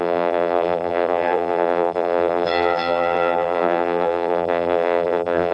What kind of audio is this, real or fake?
fake